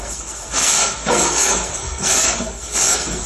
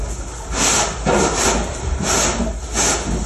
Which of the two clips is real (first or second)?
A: second